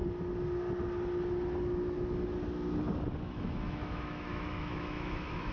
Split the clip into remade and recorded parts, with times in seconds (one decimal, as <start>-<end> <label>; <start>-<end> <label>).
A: 0.0-3.3 recorded; 3.3-5.5 remade